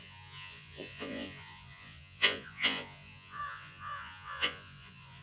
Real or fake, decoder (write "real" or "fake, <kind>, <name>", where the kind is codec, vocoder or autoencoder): fake, vocoder, Vocos